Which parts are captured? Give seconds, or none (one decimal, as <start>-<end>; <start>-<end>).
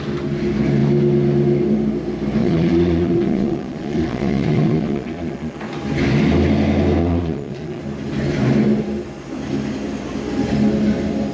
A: 0.0-2.4; 5.6-7.0; 7.8-11.3